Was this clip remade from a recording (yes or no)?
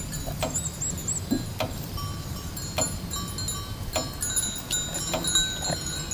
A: no